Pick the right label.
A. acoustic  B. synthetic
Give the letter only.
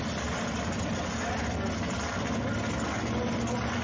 A